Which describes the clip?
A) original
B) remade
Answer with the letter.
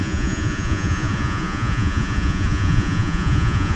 B